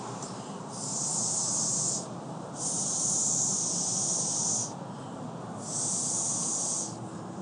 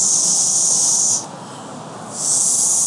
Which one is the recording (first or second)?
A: second